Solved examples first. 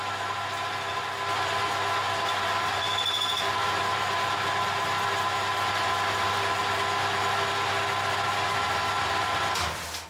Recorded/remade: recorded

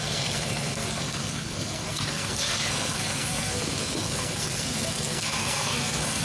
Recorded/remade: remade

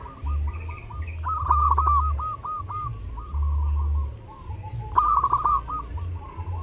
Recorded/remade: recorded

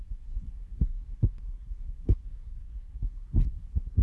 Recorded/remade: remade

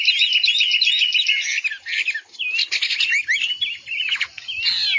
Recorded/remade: recorded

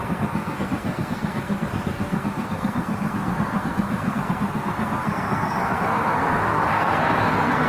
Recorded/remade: remade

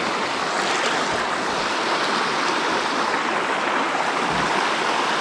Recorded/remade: recorded